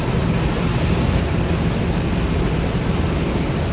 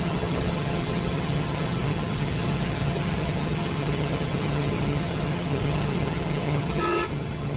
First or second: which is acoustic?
first